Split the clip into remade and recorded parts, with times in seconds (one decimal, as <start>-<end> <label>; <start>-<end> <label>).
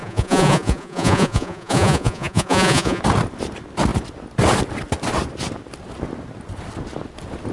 0.0-3.0 remade; 3.0-7.5 recorded